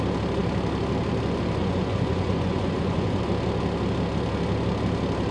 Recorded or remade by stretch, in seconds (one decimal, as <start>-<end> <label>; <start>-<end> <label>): 0.0-1.6 recorded; 1.6-3.2 remade; 3.2-5.3 recorded